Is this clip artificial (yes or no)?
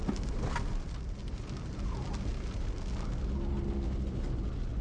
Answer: no